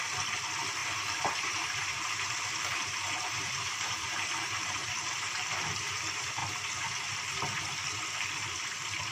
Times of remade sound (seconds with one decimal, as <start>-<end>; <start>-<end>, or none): 0.8-6.0